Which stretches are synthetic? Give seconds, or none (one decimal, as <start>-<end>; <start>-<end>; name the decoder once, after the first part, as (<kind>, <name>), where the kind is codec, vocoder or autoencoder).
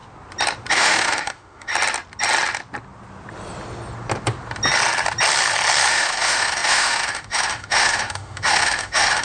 0.7-1.7 (autoencoder, DAC-VAE); 5.9-9.2